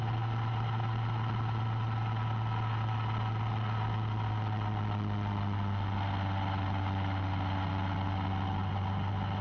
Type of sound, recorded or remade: recorded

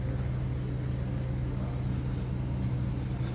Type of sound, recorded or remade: recorded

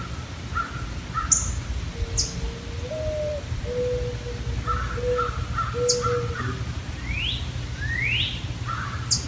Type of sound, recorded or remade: recorded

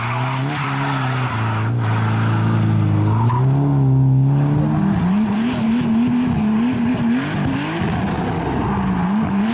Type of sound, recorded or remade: recorded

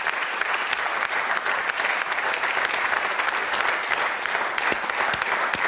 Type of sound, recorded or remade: recorded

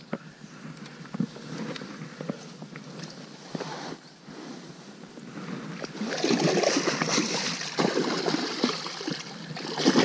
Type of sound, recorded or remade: recorded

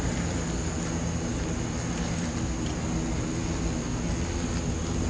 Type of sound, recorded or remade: recorded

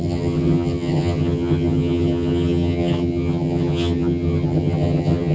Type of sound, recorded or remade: remade